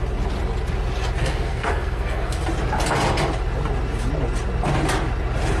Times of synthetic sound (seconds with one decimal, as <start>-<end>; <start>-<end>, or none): 1.2-2.4